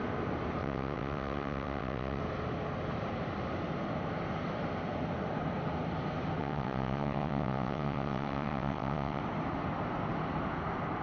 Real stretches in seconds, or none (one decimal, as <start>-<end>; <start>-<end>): 0.0-0.6; 2.2-6.4; 9.2-11.0